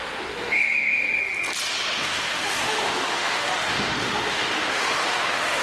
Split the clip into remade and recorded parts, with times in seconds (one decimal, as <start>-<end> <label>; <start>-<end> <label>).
0.0-1.2 remade; 1.2-2.0 recorded; 2.0-5.6 remade

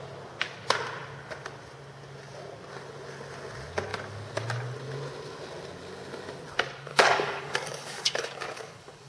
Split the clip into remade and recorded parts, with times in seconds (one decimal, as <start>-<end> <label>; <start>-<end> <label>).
0.0-6.9 recorded; 6.9-9.1 remade

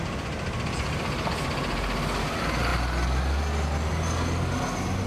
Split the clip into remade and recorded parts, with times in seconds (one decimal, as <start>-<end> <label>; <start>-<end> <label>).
0.0-5.1 recorded

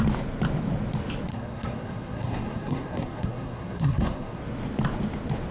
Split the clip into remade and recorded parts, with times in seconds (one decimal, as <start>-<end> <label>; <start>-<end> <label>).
0.0-1.3 recorded; 1.3-4.4 remade; 4.4-5.5 recorded

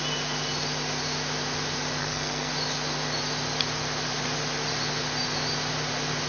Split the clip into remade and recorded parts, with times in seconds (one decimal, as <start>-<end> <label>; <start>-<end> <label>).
0.0-2.0 recorded; 2.0-2.5 remade; 2.5-6.3 recorded

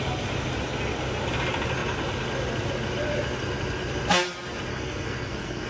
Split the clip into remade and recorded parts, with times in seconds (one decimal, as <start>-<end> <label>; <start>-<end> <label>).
0.0-4.7 recorded; 4.7-5.7 remade

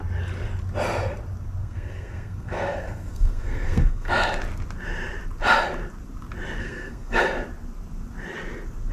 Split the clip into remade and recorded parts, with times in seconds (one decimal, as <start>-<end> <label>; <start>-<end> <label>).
0.0-1.6 recorded; 1.6-4.1 remade; 4.1-6.6 recorded; 6.6-7.2 remade; 7.2-8.9 recorded

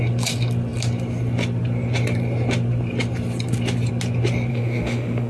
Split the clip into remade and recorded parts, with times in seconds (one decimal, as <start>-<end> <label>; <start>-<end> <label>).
0.0-4.5 recorded; 4.5-5.3 remade